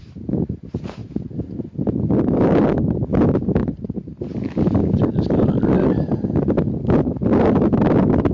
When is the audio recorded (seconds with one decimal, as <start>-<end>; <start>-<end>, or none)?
0.0-8.3